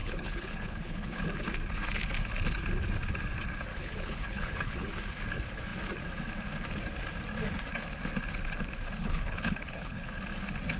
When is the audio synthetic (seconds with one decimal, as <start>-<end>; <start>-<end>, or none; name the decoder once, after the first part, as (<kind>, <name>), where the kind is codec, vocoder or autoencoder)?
0.0-1.2 (codec, HILCodec); 3.7-4.9; 9.0-10.2